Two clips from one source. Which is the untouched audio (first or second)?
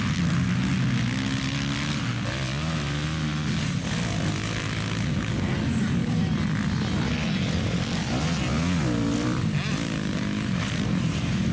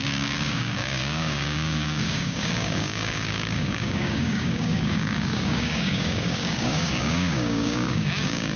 first